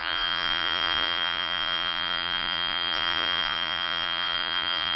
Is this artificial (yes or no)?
yes